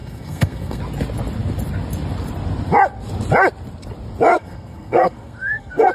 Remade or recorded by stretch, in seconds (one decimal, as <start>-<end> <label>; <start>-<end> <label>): 0.0-0.8 remade; 0.8-4.3 recorded; 4.3-5.9 remade